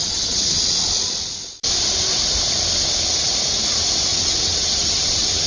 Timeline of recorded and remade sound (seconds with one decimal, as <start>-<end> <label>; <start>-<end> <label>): 0.0-0.6 remade; 0.6-4.1 recorded; 4.1-5.5 remade